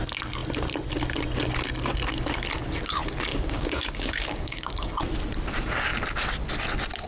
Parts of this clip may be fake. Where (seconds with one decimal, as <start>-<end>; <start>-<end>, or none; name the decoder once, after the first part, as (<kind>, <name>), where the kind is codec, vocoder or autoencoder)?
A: 3.3-5.0 (codec, DAC)